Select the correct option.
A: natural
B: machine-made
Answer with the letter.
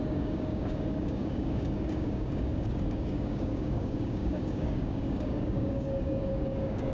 B